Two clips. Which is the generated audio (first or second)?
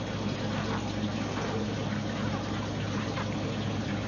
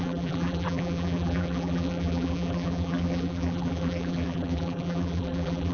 second